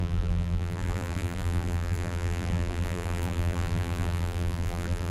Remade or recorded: remade